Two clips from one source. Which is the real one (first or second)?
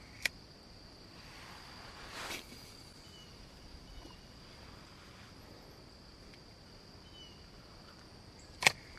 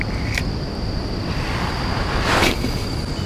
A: second